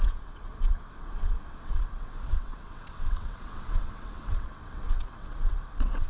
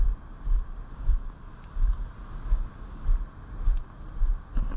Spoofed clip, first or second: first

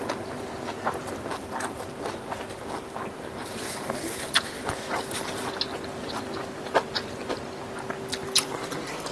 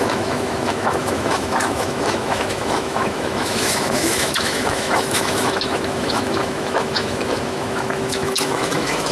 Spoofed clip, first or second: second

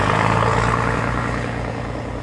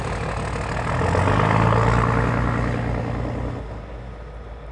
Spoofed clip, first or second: first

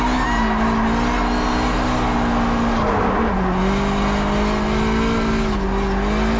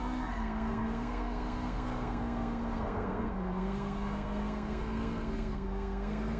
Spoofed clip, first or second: second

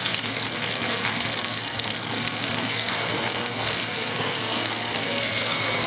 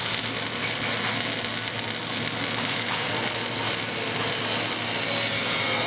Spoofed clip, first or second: first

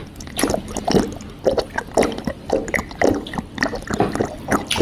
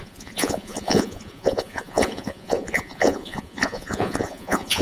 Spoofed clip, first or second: second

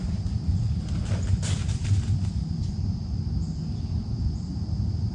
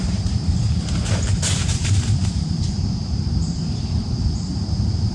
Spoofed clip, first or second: second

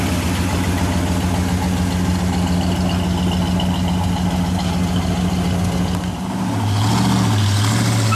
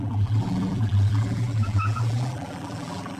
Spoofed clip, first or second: second